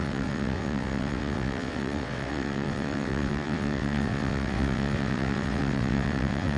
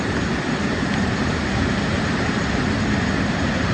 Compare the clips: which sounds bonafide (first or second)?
second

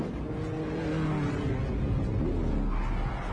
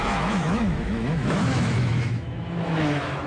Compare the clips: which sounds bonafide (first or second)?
first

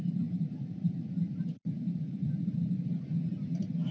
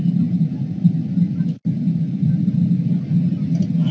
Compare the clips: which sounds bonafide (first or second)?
second